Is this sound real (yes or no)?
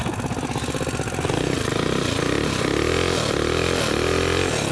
yes